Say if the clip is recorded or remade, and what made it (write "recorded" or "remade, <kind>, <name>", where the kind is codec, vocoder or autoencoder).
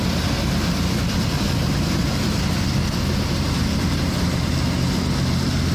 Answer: recorded